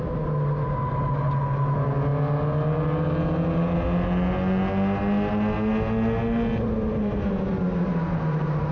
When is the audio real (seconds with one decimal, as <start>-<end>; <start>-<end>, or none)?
0.0-8.7